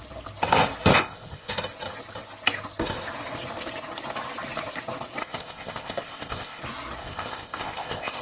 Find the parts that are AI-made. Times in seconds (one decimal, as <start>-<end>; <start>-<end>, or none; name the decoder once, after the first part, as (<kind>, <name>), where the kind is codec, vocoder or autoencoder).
0.9-1.5 (codec, ZipCodec); 5.2-6.6; 7.0-8.2